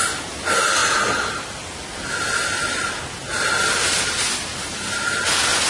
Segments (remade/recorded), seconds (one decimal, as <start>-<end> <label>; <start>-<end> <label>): 0.0-5.7 recorded